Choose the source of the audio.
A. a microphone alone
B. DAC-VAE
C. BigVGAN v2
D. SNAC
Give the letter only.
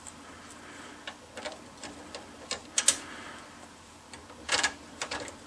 A